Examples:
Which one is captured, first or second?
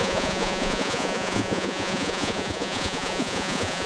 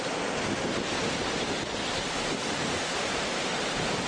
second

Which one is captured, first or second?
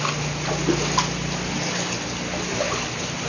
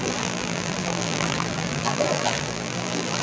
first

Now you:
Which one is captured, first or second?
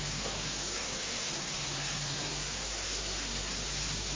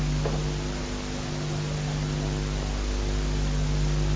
second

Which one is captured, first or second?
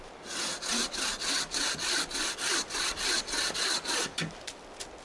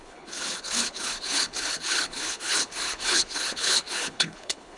first